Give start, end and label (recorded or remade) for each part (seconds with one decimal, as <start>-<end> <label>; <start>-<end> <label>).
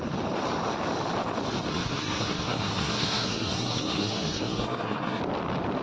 0.0-1.7 recorded; 1.7-5.2 remade; 5.2-5.8 recorded